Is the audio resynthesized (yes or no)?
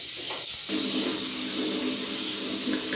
no